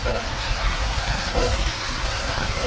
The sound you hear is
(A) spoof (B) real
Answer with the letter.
A